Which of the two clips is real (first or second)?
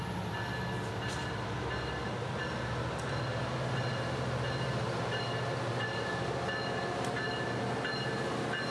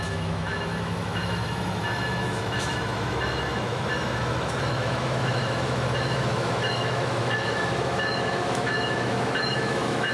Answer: first